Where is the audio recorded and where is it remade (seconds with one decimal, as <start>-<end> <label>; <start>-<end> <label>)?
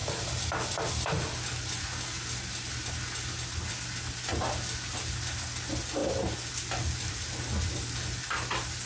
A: 0.0-8.9 recorded